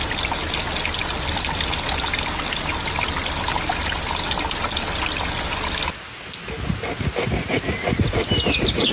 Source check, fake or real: real